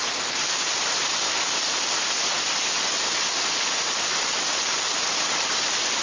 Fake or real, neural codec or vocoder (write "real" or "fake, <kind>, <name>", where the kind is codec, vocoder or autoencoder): real